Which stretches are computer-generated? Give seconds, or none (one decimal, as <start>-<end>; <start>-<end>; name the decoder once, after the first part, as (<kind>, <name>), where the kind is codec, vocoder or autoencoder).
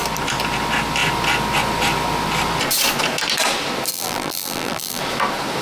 3.9-5.0 (vocoder, BigVGAN v2)